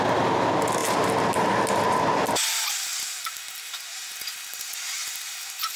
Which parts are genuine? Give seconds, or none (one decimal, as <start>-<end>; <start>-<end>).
0.0-5.8